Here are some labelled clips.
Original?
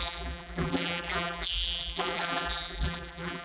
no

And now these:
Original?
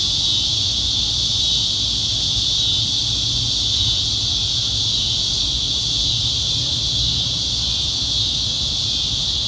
yes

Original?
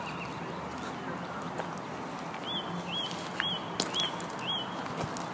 yes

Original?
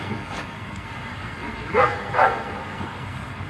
no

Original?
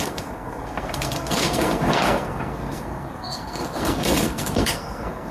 no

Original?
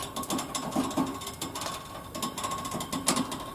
yes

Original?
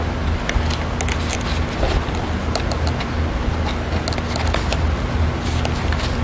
yes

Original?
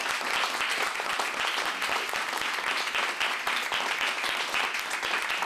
yes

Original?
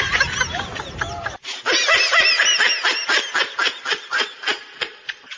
yes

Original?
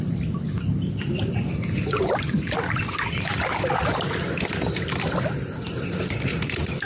no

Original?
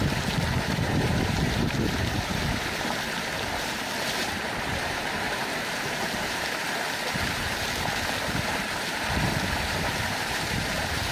no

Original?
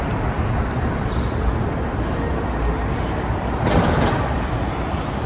yes